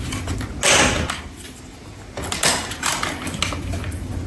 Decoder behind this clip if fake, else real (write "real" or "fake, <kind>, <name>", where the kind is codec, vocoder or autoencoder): real